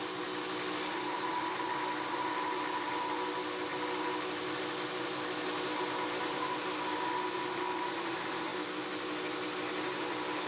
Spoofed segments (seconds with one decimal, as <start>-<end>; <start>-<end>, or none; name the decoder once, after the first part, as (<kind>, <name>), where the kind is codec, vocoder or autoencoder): none